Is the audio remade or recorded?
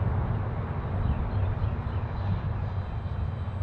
recorded